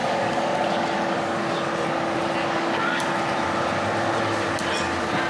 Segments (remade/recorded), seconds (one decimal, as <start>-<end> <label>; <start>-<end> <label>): 0.0-1.4 remade; 1.4-2.4 recorded; 2.4-3.1 remade; 3.1-5.3 recorded